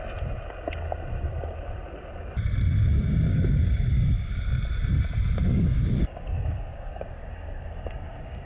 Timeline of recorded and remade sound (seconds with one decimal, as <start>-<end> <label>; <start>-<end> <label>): 0.0-2.9 recorded; 2.9-4.3 remade; 4.3-5.5 recorded; 5.5-8.5 remade